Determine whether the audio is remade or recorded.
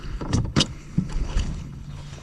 remade